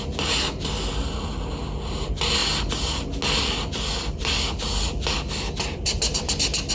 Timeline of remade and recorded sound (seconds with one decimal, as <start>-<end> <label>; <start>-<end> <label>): 0.0-6.7 recorded